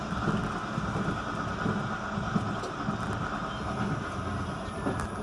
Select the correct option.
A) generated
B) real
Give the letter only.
B